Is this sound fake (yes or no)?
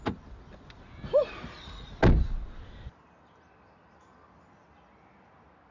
no